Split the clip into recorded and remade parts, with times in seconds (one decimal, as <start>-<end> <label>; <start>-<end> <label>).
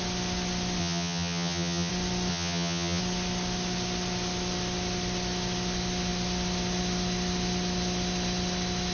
0.0-0.8 recorded; 0.8-1.9 remade; 1.9-2.3 recorded; 2.3-3.0 remade; 3.0-8.9 recorded